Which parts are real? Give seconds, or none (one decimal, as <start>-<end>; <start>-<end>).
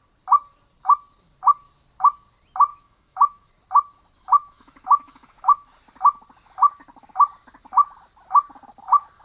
0.0-2.7; 3.5-4.4; 5.8-9.2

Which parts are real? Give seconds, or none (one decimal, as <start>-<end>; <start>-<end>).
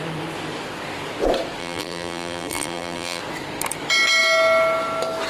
0.0-1.6; 3.2-5.3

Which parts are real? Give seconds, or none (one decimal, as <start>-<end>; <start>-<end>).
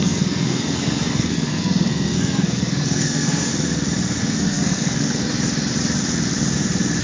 3.5-4.2; 5.2-7.0